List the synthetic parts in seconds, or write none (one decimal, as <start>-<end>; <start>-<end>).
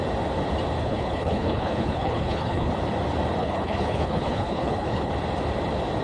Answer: 0.8-2.7; 3.4-5.1